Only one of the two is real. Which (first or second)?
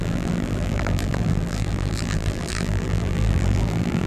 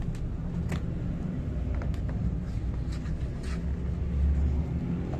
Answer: second